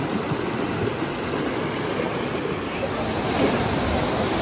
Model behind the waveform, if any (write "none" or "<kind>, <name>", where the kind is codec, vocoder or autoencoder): none